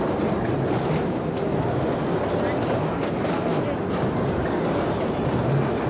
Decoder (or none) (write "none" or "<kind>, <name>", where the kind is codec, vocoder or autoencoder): none